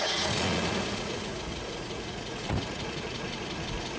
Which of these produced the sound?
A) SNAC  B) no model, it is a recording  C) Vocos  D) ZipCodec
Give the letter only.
C